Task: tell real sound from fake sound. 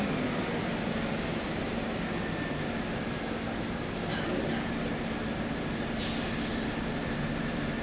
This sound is real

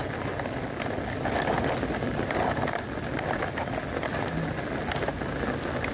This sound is real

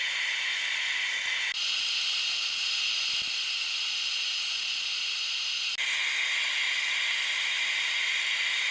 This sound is real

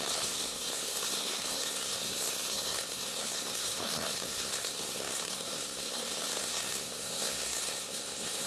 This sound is fake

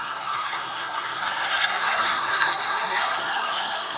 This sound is fake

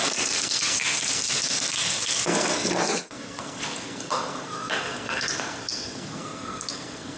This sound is fake